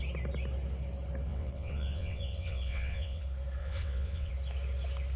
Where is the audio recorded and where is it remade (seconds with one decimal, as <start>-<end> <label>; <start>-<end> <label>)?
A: 0.0-1.3 recorded; 1.3-3.2 remade; 3.2-3.6 recorded; 3.6-4.3 remade; 4.3-5.2 recorded